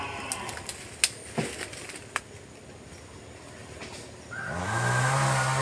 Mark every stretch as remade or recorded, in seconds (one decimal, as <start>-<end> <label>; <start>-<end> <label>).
0.0-5.6 recorded